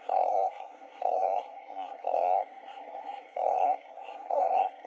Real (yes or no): no